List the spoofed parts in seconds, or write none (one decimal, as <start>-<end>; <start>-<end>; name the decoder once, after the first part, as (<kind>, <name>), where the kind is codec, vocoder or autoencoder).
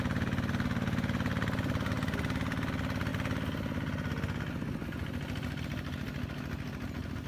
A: none